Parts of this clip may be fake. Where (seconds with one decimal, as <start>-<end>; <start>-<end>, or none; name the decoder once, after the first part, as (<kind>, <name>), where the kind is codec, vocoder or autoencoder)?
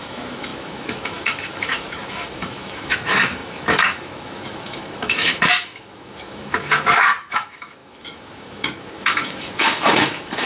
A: 0.0-10.5 (autoencoder, DAC-VAE)